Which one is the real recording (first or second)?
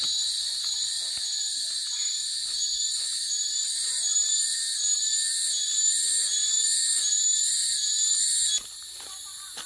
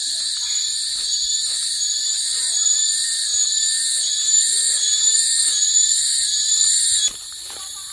first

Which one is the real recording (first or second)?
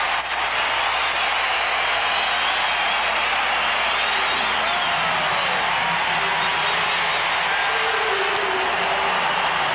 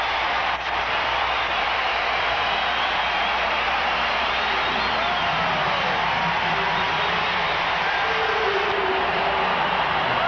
first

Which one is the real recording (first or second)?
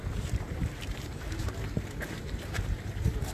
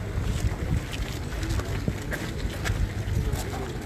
second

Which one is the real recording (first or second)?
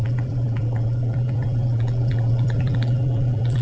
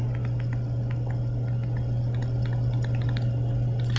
second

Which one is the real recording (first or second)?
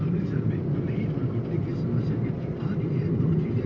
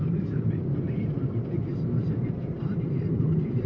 first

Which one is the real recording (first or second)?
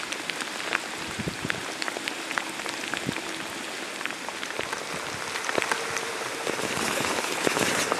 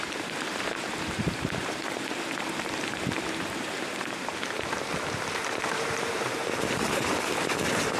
first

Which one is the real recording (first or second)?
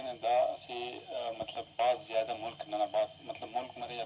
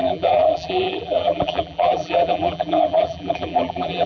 first